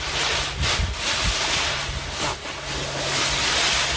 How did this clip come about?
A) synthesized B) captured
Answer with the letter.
B